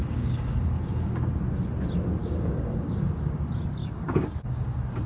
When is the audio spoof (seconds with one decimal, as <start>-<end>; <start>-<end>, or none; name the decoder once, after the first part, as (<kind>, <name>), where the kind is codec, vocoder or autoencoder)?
0.0-1.2 (codec, DAC); 2.2-3.3; 3.8-5.1